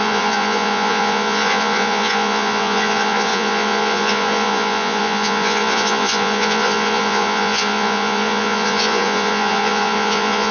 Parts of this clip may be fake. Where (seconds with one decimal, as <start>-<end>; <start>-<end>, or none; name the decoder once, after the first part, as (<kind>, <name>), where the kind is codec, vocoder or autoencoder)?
0.0-10.5 (vocoder, Vocos)